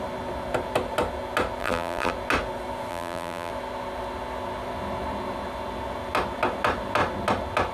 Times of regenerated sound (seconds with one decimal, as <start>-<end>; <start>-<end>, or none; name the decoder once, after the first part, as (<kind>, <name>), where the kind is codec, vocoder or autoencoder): 1.6-2.1 (vocoder, BigVGAN v2); 2.9-3.5